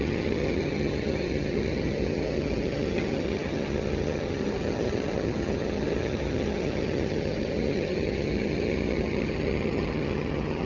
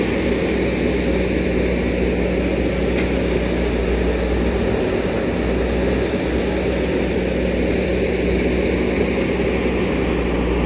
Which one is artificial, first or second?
first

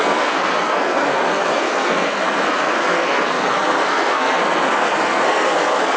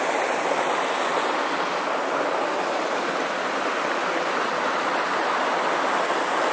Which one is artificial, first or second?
first